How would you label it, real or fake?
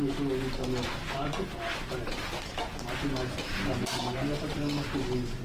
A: real